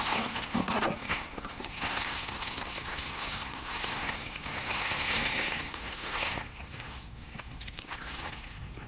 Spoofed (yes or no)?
yes